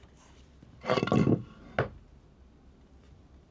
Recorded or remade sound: recorded